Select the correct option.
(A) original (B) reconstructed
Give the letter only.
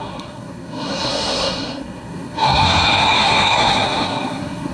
B